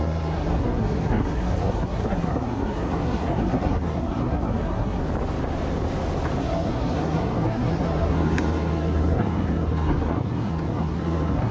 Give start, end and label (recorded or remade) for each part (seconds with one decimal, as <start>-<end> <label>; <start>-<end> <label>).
0.0-5.0 remade; 5.0-6.4 recorded; 6.4-11.5 remade